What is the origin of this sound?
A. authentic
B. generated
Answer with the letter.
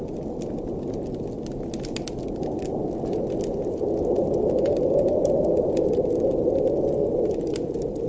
A